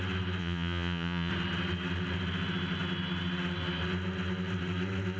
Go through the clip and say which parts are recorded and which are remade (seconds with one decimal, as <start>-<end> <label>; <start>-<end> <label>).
0.0-0.4 recorded; 0.4-1.3 remade; 1.3-5.2 recorded